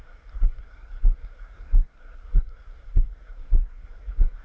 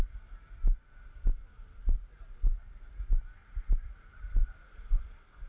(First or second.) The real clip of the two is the second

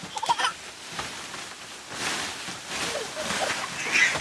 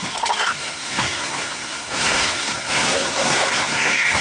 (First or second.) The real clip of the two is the first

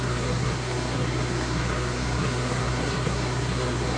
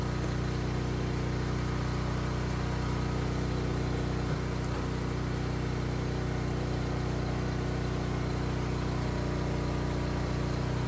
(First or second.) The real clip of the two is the second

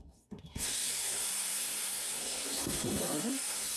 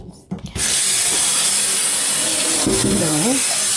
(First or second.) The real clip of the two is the second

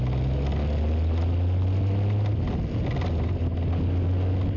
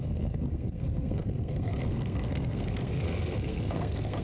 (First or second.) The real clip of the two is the first